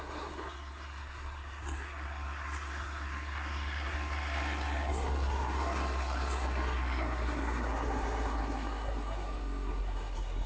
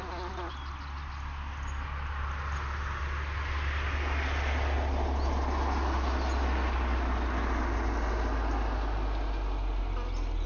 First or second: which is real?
second